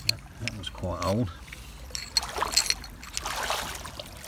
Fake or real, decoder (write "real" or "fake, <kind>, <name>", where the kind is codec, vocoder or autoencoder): real